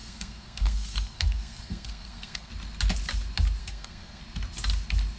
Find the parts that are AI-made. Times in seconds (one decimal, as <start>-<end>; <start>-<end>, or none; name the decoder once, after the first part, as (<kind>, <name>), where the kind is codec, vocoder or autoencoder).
0.0-2.5 (codec, SNAC); 3.6-4.2